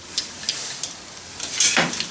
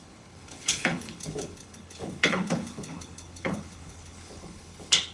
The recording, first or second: first